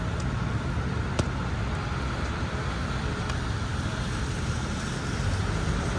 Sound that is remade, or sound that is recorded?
recorded